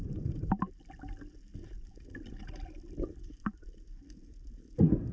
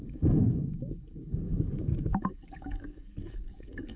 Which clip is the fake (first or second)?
second